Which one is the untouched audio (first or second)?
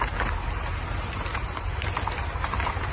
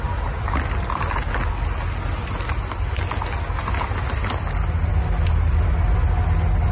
second